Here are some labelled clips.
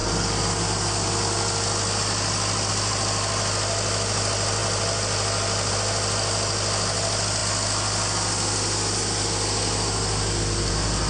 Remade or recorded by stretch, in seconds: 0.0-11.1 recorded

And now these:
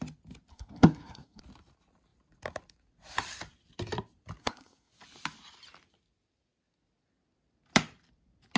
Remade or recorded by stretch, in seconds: 0.0-0.5 recorded; 0.5-1.4 remade; 1.4-4.4 recorded; 4.4-4.9 remade; 4.9-8.6 recorded

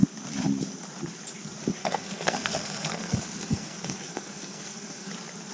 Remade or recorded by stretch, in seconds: 0.0-1.8 recorded; 1.8-5.1 remade; 5.1-5.5 recorded

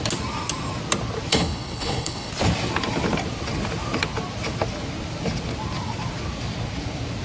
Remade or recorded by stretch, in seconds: 0.0-1.3 recorded; 1.3-2.3 remade; 2.3-7.2 recorded

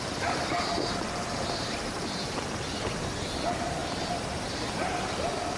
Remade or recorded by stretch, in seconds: 0.0-5.6 recorded

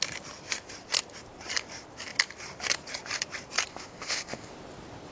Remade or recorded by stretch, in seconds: 0.0-3.7 recorded; 3.7-4.5 remade; 4.5-5.1 recorded

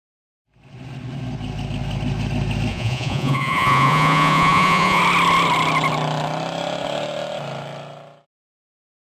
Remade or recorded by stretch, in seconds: 0.0-2.7 recorded; 2.7-5.0 remade; 5.0-9.1 recorded

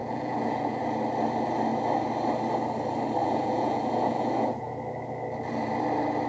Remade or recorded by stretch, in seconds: 0.0-0.8 remade; 0.8-3.2 recorded; 3.2-4.7 remade; 4.7-6.3 recorded